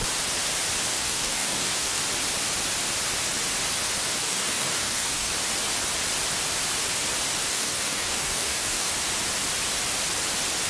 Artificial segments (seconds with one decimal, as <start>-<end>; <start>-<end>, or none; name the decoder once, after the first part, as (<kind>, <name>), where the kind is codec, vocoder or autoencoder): 0.9-2.0 (codec, DAC); 4.2-5.3; 7.5-8.9